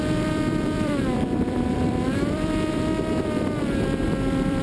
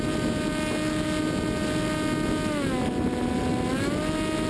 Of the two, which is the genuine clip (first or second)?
second